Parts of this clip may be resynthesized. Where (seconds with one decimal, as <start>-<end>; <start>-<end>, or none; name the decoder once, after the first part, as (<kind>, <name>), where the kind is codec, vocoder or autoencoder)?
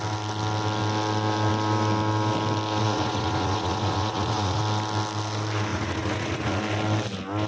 2.8-4.6 (vocoder, Vocos); 5.7-6.6